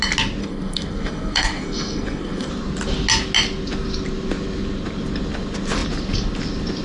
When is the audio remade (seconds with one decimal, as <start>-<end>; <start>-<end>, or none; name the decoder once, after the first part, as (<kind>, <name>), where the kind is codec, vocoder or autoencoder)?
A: 0.4-2.5 (codec, SNAC)